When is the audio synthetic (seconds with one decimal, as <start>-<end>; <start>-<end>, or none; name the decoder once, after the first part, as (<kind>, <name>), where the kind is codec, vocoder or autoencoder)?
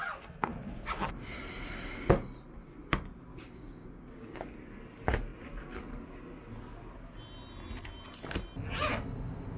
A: 3.3-4.4 (codec, DAC)